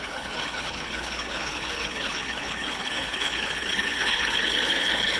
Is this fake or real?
fake